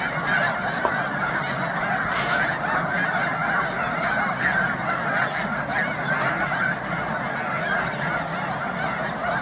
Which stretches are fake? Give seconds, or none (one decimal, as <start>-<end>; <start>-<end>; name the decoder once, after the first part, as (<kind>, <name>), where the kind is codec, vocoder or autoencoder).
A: none